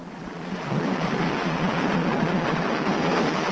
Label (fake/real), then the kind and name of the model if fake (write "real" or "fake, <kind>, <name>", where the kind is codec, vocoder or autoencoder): fake, vocoder, Vocos